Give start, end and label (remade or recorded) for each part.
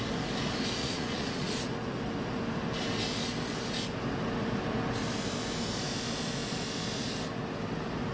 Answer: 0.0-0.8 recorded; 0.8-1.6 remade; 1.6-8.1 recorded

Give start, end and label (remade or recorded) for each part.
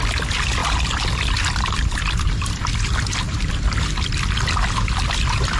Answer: 0.0-5.6 recorded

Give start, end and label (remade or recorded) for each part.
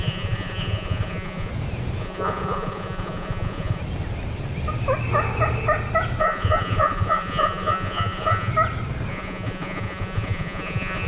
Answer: 0.0-1.5 remade; 1.5-2.0 recorded; 2.0-3.8 remade; 3.8-6.2 recorded; 6.2-8.5 remade; 8.5-9.1 recorded; 9.1-11.1 remade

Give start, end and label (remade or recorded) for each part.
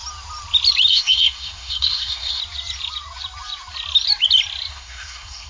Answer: 0.0-0.9 recorded; 0.9-2.4 remade; 2.4-4.7 recorded; 4.7-5.5 remade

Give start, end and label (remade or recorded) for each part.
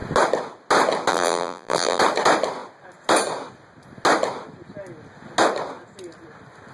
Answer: 0.0-1.1 recorded; 1.1-2.0 remade; 2.0-6.7 recorded